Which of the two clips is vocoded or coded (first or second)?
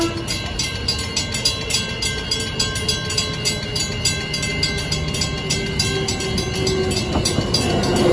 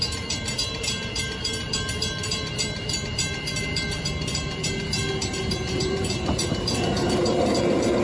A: second